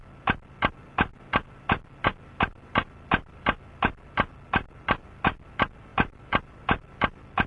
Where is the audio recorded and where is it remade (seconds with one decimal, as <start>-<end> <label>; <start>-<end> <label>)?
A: 0.0-7.5 recorded